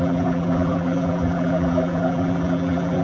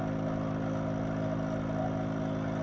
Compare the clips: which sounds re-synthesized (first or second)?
first